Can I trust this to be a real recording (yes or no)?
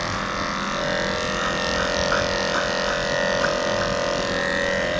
yes